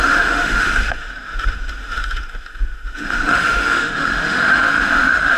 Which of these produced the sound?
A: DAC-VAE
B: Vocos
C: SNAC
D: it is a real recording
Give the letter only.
A